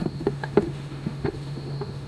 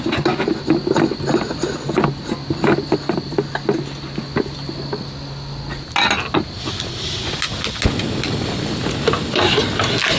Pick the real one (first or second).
second